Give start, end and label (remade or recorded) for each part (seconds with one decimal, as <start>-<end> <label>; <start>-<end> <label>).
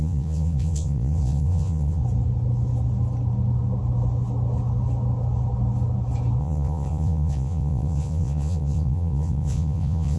0.0-2.0 remade; 2.0-6.4 recorded; 6.4-10.2 remade